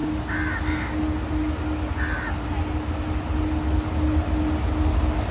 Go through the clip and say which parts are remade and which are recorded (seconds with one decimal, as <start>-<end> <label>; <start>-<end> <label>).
0.0-5.3 recorded

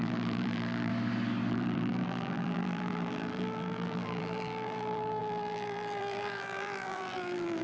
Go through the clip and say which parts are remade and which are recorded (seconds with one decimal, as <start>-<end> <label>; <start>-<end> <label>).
0.0-0.9 remade; 0.9-1.5 recorded; 1.5-7.6 remade

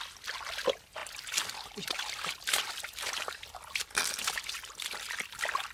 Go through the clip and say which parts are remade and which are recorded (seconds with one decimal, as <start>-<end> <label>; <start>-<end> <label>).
0.0-5.7 recorded